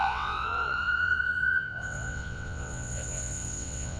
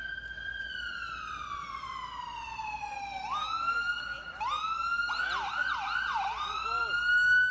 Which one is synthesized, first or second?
first